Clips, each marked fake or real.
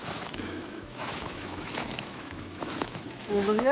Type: fake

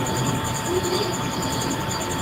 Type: real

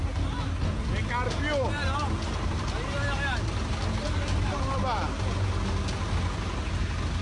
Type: real